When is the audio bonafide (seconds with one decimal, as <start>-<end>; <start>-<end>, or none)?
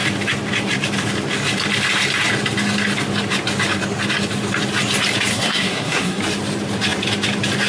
0.0-5.3; 6.2-7.7